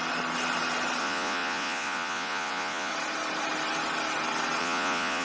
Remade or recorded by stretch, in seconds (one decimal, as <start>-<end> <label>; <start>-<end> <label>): 0.0-1.0 recorded; 1.0-2.9 remade; 2.9-4.6 recorded; 4.6-5.2 remade